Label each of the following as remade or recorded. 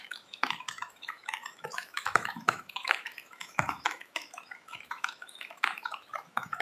remade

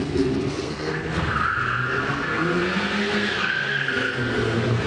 remade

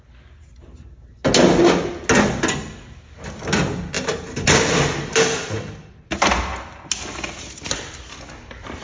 recorded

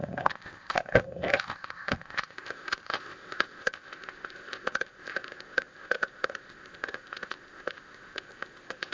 remade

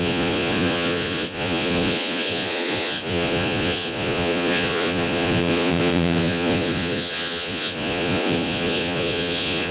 remade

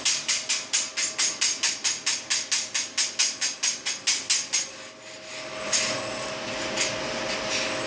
recorded